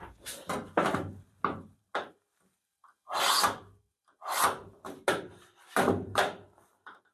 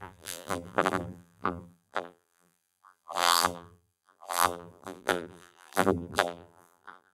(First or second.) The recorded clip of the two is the first